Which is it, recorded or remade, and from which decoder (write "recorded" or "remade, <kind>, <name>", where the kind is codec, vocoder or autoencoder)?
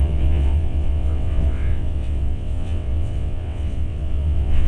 remade, vocoder, WaveNeXt